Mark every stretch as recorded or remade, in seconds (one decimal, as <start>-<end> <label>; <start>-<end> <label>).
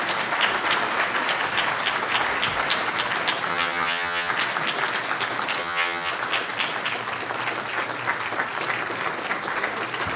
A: 0.0-3.5 recorded; 3.5-4.3 remade; 4.3-5.6 recorded; 5.6-6.1 remade; 6.1-10.2 recorded